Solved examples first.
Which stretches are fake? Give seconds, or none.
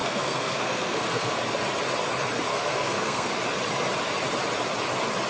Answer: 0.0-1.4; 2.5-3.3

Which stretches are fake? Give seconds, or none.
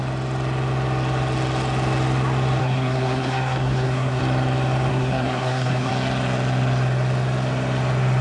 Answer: 2.6-4.2; 4.9-5.9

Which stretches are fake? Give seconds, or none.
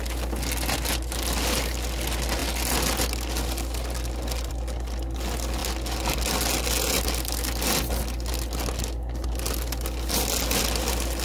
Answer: none